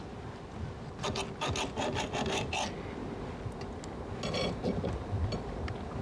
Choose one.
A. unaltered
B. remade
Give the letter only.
A